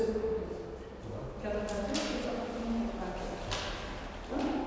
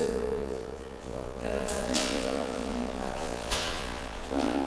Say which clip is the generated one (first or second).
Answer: second